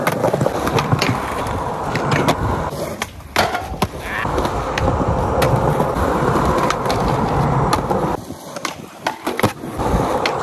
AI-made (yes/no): no